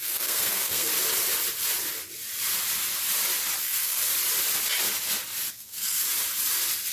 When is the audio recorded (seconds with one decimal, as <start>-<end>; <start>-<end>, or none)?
0.9-3.6; 4.1-5.5; 6.0-6.9